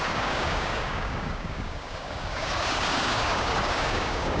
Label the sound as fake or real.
fake